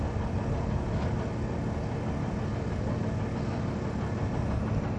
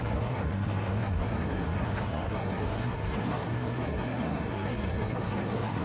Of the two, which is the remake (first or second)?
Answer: second